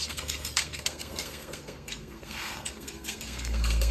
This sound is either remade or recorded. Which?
remade